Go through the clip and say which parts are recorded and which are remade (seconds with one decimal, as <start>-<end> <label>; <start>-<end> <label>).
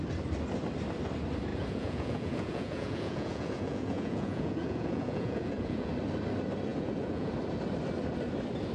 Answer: 0.0-1.5 recorded; 1.5-5.9 remade; 5.9-6.7 recorded; 6.7-7.3 remade; 7.3-8.7 recorded